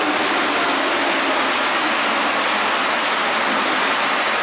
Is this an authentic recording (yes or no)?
yes